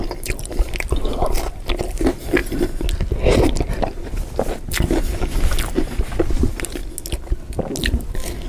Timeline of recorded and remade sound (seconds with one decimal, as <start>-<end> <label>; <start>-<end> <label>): 0.0-8.5 recorded